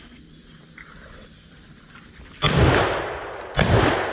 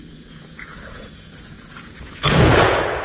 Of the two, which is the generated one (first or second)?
second